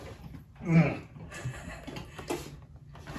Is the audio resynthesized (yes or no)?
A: no